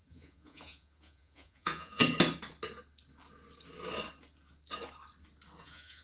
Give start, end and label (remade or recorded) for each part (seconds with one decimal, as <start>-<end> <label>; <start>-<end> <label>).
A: 0.0-2.0 remade; 2.0-5.6 recorded; 5.6-6.0 remade